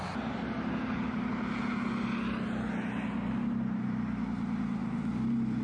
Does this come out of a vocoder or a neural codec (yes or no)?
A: no